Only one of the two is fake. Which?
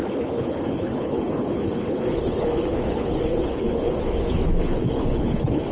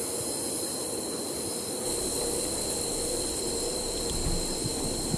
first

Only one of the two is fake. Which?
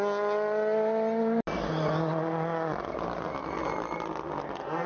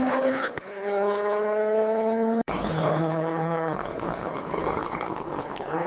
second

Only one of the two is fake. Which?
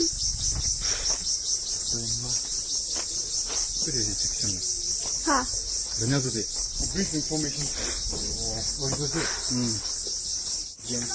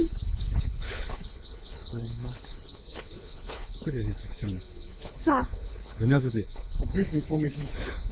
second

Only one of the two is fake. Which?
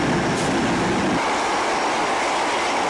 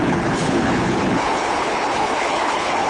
second